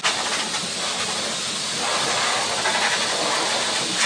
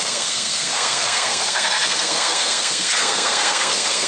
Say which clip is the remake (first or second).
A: second